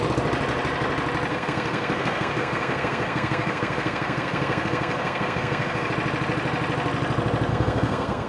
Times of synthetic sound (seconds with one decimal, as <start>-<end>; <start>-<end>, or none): 1.3-5.9; 7.5-8.3